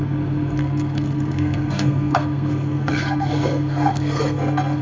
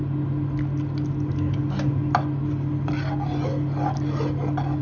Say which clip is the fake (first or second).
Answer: first